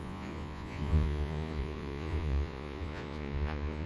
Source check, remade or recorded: remade